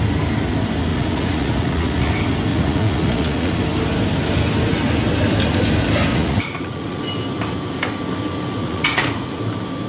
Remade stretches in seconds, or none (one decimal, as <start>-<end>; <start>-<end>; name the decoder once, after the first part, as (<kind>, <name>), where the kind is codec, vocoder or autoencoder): 0.9-2.1 (vocoder, Vocos); 2.5-3.6; 6.1-7.0; 8.6-9.4